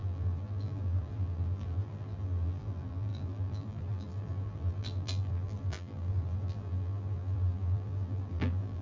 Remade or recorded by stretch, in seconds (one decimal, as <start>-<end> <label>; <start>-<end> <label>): 0.0-8.8 remade